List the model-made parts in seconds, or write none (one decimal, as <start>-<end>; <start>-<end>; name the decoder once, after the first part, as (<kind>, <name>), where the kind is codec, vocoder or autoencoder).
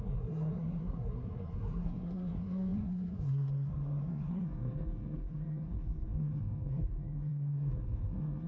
0.0-8.5 (codec, SNAC)